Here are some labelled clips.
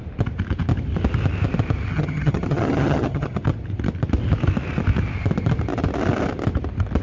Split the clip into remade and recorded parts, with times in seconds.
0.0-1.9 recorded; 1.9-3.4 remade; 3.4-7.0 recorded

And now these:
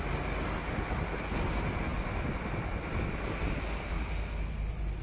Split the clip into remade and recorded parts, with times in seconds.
0.0-5.0 recorded